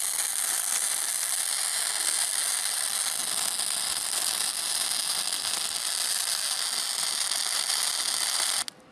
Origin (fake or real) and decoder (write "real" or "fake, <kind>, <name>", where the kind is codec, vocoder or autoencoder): real